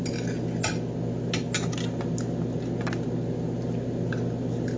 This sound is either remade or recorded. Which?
recorded